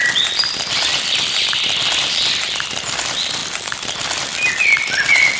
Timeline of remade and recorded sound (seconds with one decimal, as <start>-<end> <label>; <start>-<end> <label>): 0.0-3.4 remade; 3.4-4.5 recorded; 4.5-5.4 remade